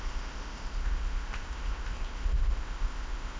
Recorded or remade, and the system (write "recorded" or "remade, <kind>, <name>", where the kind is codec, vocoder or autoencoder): remade, codec, ZipCodec